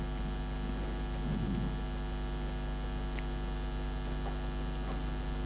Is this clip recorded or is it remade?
recorded